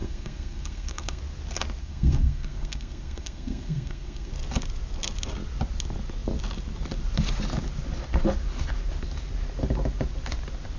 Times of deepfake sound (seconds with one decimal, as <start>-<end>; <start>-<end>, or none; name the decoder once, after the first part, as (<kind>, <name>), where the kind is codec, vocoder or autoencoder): 0.0-1.2 (codec, SNAC); 1.8-4.3